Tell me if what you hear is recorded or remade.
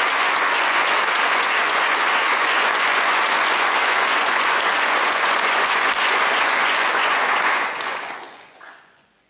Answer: remade